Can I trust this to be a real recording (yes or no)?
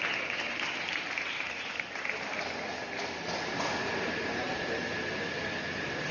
yes